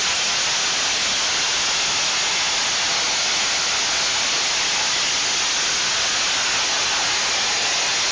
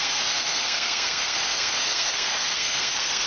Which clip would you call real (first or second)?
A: first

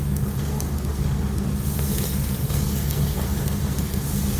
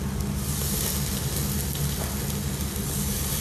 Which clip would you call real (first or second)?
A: second